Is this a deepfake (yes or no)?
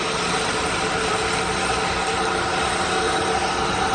no